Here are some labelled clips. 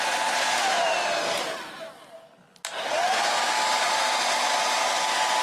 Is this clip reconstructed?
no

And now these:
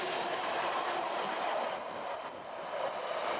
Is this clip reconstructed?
no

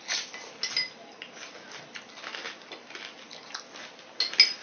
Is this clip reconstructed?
no